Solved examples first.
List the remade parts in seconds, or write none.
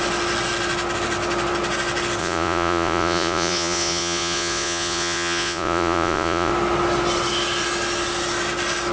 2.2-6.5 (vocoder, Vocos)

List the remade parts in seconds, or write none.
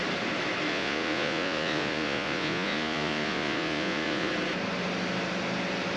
0.7-4.3 (vocoder, Vocos)